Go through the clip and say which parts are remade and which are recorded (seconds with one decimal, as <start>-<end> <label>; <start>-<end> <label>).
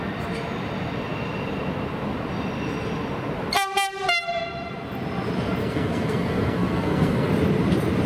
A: 0.0-5.6 recorded; 5.6-7.3 remade; 7.3-8.1 recorded